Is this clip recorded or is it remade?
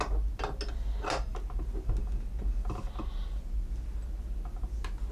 recorded